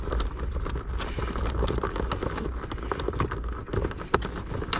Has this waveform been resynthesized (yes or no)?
no